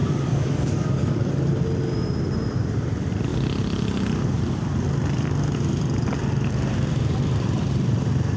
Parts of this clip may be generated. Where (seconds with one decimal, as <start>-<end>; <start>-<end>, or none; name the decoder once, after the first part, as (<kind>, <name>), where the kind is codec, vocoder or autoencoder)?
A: 0.0-1.5 (codec, DAC)